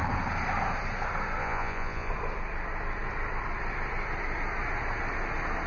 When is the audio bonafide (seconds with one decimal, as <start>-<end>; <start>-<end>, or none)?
0.0-1.4; 2.1-5.7